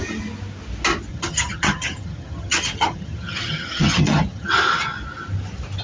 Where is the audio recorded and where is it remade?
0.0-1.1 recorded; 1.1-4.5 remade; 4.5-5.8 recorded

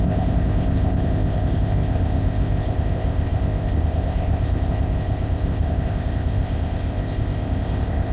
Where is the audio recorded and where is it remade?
0.0-8.1 remade